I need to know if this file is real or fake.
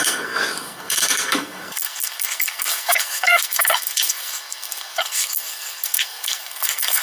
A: fake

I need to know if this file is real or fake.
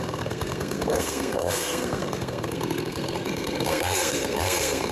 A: fake